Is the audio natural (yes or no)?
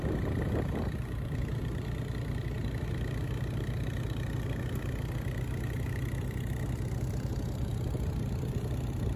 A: yes